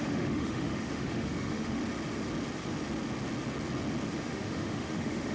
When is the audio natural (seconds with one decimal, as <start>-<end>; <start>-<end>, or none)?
1.8-4.2